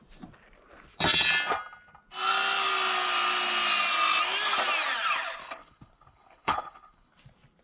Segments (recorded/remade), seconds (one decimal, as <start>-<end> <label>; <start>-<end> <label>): 0.0-5.4 recorded; 5.4-7.1 remade; 7.1-7.6 recorded